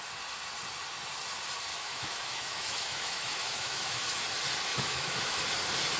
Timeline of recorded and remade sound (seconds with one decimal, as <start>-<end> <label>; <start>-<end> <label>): 0.0-1.7 recorded; 1.7-4.2 remade; 4.2-4.7 recorded; 4.7-5.4 remade; 5.4-6.0 recorded